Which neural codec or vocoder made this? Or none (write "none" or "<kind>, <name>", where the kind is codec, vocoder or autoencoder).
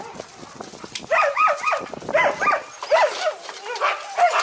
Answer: none